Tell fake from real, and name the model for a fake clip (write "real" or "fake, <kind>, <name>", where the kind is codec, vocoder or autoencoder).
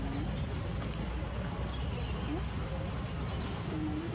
real